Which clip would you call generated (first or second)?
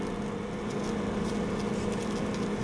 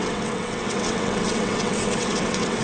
second